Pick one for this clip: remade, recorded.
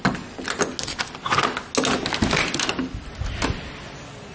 recorded